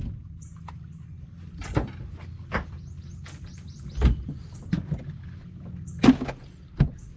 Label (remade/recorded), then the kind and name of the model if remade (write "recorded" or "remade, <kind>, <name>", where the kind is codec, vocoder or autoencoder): recorded